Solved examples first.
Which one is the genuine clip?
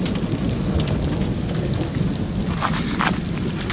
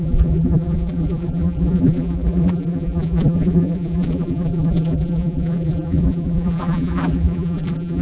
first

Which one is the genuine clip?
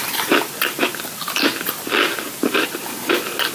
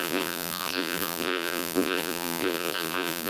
first